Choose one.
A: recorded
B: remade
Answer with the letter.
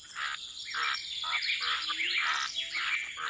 A